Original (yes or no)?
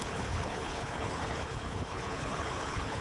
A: no